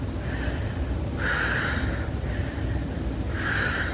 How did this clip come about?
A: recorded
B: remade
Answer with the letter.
A